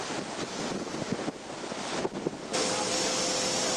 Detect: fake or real real